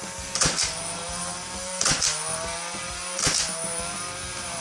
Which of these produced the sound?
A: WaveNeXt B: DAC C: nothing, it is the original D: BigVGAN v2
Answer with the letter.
D